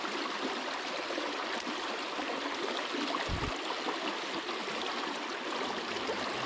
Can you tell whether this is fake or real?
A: real